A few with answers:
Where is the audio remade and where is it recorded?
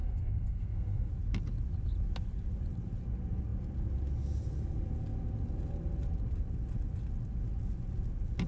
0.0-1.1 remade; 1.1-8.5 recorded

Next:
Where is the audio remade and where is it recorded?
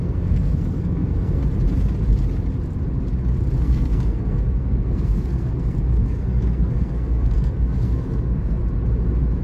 0.0-1.4 remade; 1.4-3.6 recorded; 3.6-8.6 remade; 8.6-9.4 recorded